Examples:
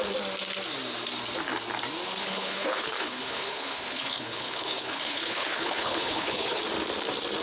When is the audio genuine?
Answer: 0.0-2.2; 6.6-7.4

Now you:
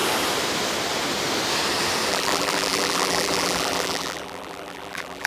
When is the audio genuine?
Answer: 0.0-2.1

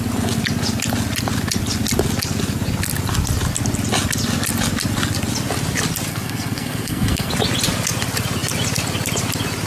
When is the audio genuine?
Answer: 0.0-6.1; 7.3-9.7